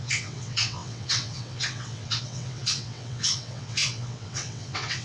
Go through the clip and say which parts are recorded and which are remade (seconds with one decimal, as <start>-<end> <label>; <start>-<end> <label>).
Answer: 0.0-5.0 remade